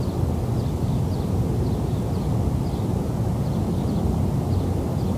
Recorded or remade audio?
recorded